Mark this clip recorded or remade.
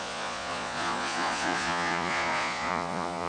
remade